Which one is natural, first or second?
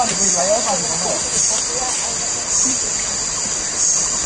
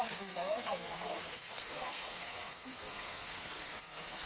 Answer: first